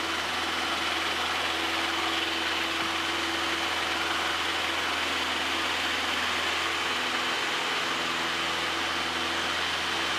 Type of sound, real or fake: real